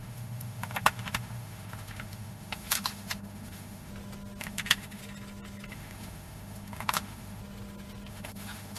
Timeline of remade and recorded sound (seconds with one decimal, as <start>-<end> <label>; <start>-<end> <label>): 0.0-3.9 remade; 3.9-4.4 recorded; 4.4-5.0 remade; 5.0-5.7 recorded; 5.7-7.4 remade; 7.4-8.1 recorded; 8.1-8.8 remade